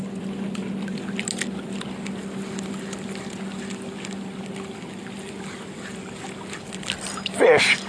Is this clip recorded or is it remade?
recorded